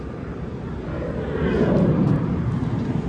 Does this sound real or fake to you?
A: real